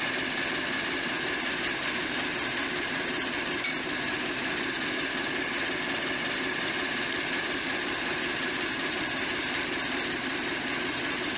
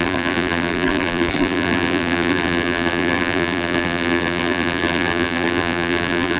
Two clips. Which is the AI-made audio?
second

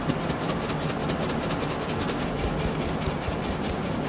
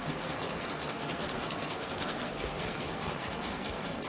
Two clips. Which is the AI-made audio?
second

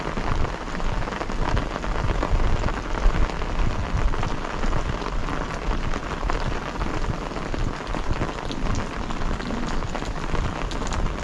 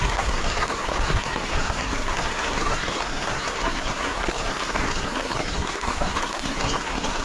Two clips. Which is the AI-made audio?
second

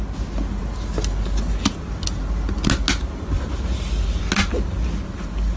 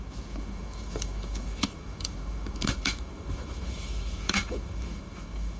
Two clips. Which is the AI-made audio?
second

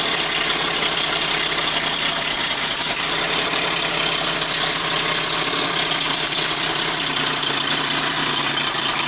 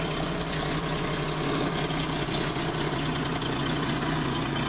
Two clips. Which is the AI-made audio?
second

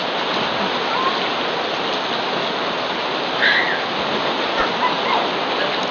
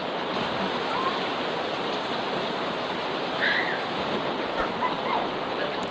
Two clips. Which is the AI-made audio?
second